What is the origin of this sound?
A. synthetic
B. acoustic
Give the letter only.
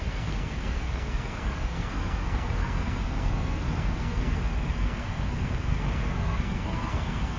A